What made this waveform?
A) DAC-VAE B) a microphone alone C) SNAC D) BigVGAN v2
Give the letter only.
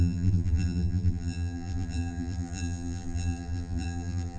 D